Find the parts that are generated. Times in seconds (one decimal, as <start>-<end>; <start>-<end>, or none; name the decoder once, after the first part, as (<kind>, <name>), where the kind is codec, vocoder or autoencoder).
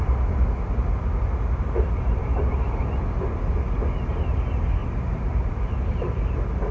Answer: 2.2-2.9 (vocoder, BigVGAN v2); 4.8-5.6